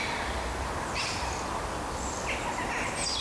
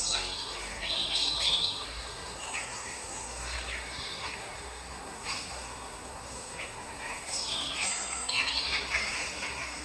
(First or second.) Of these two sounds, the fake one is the second